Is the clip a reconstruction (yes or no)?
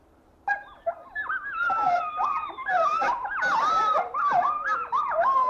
yes